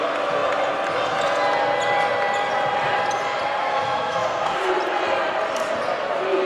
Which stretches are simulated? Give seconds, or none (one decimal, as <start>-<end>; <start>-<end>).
3.6-4.7